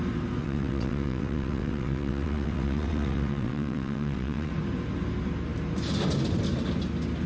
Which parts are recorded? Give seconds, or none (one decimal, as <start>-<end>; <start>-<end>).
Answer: 0.0-0.4; 4.5-7.3